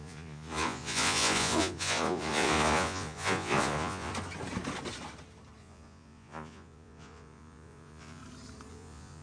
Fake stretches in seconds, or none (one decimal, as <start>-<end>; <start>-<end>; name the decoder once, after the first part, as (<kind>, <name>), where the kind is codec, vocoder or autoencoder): 0.0-4.1 (vocoder, Vocos); 5.6-8.2; 8.7-9.2